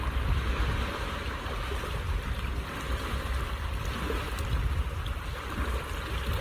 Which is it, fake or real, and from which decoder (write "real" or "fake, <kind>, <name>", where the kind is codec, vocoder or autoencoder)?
real